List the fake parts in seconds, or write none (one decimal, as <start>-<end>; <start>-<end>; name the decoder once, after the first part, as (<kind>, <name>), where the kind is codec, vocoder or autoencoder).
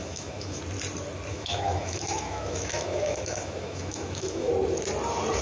0.0-0.6 (autoencoder, DAC-VAE); 1.3-4.5